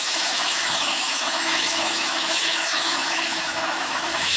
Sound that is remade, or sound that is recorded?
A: remade